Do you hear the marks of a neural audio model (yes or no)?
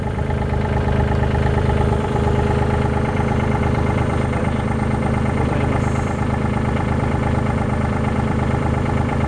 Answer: yes